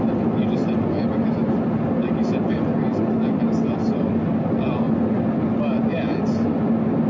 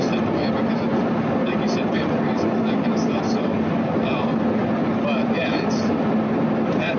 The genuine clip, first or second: first